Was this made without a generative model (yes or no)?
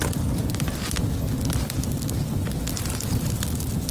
yes